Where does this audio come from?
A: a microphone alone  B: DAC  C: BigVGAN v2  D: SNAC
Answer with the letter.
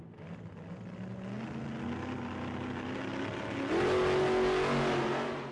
A